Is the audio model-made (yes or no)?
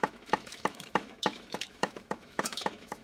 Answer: yes